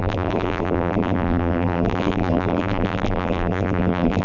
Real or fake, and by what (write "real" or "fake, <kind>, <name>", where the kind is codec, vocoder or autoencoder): fake, vocoder, BigVGAN v2